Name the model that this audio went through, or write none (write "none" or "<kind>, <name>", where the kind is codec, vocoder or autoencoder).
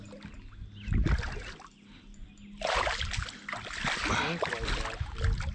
none